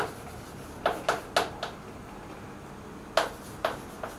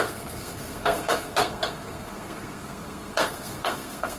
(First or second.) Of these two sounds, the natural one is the first